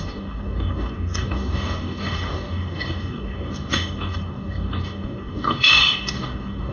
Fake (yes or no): yes